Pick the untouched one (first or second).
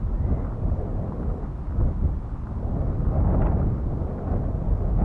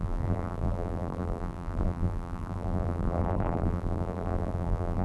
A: first